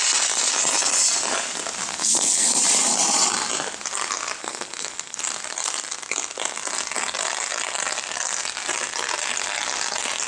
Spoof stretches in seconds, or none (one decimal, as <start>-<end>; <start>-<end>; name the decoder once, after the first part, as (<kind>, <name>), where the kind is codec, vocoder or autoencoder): 1.9-2.6 (codec, SNAC); 4.4-5.2